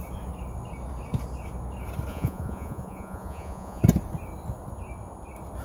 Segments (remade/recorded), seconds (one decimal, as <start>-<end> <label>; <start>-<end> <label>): 0.0-2.1 recorded; 2.1-3.8 remade; 3.8-5.6 recorded